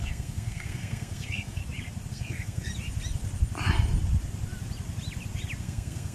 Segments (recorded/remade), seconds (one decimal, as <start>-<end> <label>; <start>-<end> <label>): 0.0-1.6 remade; 1.6-2.1 recorded; 2.1-2.7 remade; 2.7-5.6 recorded; 5.6-6.1 remade